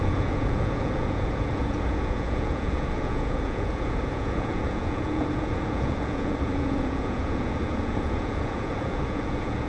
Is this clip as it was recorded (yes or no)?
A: no